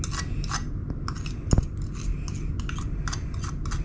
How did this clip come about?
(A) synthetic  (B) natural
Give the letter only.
B